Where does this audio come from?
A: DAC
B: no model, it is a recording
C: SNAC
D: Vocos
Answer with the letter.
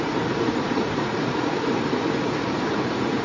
D